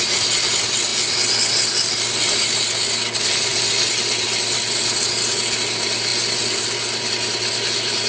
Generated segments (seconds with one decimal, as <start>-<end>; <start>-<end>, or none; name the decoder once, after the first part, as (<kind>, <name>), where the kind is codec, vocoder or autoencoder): none